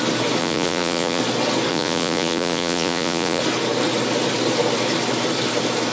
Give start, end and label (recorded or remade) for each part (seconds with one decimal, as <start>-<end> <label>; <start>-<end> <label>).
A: 0.0-0.4 recorded; 0.4-1.2 remade; 1.2-1.7 recorded; 1.7-3.4 remade; 3.4-5.9 recorded